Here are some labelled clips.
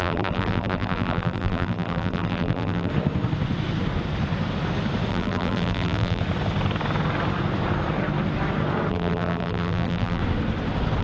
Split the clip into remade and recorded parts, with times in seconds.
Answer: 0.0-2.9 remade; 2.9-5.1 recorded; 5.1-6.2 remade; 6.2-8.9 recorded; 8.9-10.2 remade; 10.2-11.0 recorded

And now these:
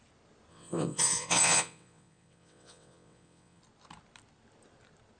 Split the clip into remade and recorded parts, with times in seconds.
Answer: 0.0-0.5 recorded; 0.5-3.6 remade; 3.6-5.2 recorded

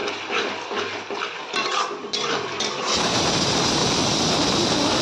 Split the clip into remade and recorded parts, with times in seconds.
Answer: 0.0-3.0 recorded; 3.0-3.8 remade; 3.8-5.0 recorded